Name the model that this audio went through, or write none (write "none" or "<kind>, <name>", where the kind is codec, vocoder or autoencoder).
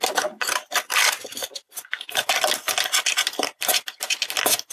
none